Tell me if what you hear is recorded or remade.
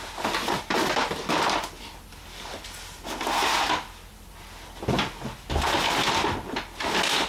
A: recorded